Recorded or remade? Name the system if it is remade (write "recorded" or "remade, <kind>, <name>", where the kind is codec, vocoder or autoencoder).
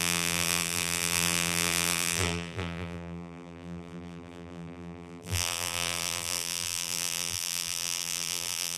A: remade, vocoder, BigVGAN v2